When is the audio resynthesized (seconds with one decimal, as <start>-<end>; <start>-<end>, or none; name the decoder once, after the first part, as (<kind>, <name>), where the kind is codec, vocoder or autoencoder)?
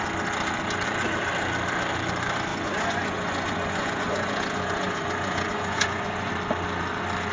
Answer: 2.5-6.3 (vocoder, Vocos)